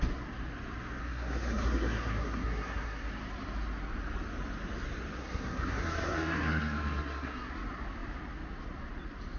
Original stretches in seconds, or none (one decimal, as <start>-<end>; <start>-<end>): 0.0-1.0; 3.1-5.2; 7.5-9.4